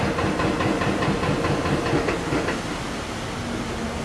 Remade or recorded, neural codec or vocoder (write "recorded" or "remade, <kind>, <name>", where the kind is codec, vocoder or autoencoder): recorded